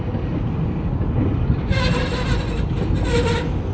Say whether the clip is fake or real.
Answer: real